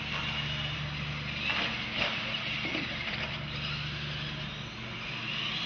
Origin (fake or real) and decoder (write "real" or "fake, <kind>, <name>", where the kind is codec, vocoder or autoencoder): real